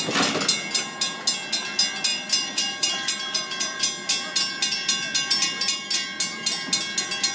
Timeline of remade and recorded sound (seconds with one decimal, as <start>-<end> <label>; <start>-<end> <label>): 0.0-2.1 recorded; 2.1-3.8 remade; 3.8-7.3 recorded